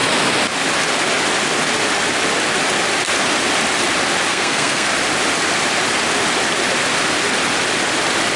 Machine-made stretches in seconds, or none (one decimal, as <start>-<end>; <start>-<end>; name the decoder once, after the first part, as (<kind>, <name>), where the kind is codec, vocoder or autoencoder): 4.3-4.9 (codec, SNAC)